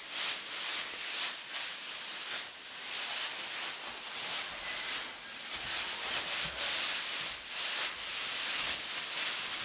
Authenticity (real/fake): real